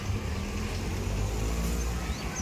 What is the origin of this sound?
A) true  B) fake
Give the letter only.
A